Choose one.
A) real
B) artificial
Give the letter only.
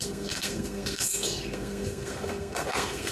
B